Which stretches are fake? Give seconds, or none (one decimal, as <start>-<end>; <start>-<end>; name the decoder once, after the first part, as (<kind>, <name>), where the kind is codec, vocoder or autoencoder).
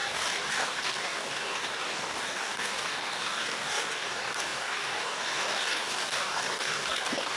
0.0-7.4 (codec, DAC)